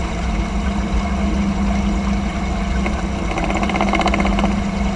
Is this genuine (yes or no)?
yes